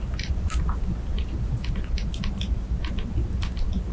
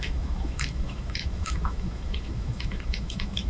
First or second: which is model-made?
second